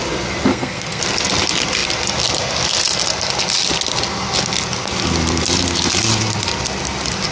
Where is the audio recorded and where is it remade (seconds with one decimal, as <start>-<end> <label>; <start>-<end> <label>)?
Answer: 0.0-0.5 recorded; 0.5-1.0 remade; 1.0-7.3 recorded